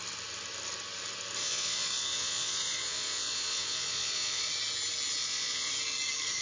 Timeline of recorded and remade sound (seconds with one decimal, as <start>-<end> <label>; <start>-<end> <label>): 0.0-1.4 recorded; 1.4-4.5 remade; 4.5-5.2 recorded; 5.2-5.7 remade; 5.7-6.4 recorded